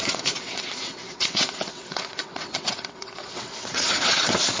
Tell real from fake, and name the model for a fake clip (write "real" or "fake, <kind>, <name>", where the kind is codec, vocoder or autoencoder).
fake, vocoder, WaveNeXt